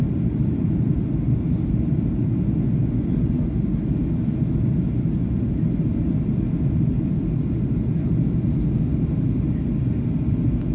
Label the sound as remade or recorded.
recorded